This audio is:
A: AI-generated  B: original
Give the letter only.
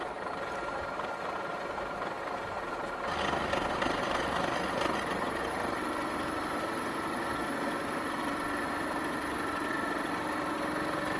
B